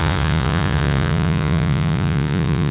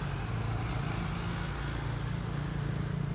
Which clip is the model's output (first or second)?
first